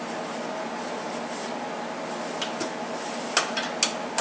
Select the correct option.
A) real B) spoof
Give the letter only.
A